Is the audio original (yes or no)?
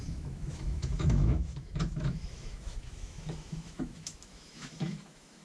no